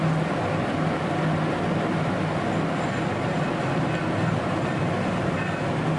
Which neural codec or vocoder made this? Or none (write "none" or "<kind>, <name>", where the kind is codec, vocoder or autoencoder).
none